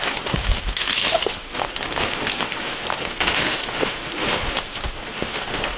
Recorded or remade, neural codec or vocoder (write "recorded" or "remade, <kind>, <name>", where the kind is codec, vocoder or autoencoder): remade, autoencoder, DAC-VAE